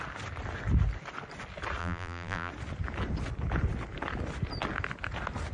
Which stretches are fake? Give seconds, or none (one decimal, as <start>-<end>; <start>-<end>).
1.8-2.5